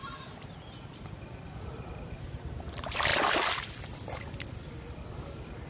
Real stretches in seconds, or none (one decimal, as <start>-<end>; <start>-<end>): 0.0-5.7